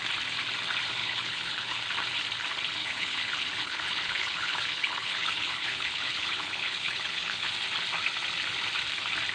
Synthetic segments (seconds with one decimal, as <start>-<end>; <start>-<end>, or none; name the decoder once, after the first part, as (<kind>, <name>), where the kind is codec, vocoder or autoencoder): 1.0-1.8 (codec, HILCodec); 2.8-7.5